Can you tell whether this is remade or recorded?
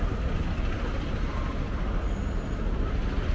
recorded